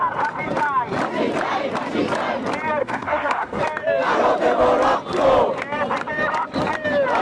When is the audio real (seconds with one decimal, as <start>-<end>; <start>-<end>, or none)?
0.0-2.8; 3.6-7.2